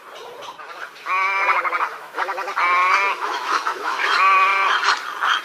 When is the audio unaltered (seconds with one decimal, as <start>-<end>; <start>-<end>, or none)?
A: 0.0-1.9; 2.5-3.1; 4.1-5.4